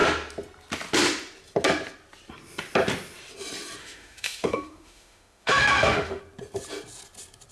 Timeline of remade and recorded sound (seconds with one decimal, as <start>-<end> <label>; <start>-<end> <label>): 0.0-3.8 recorded; 3.8-6.2 remade; 6.2-7.5 recorded